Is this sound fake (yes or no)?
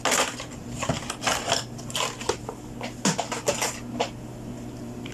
no